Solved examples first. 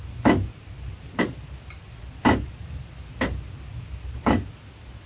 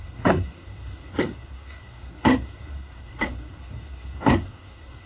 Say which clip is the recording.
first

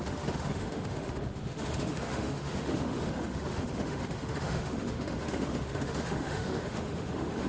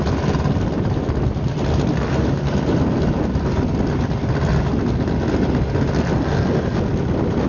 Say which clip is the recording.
second